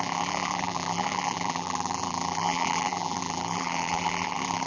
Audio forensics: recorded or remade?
remade